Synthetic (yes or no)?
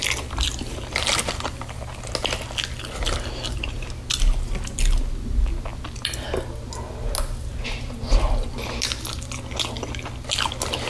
no